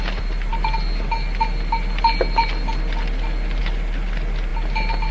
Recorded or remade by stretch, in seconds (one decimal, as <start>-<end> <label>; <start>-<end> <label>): 0.0-5.1 recorded